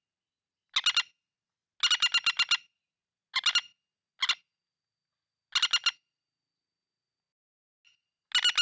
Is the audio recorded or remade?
recorded